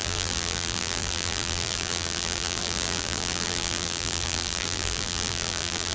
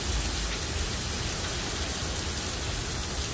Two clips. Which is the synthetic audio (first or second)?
first